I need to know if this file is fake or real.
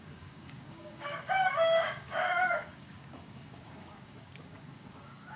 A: fake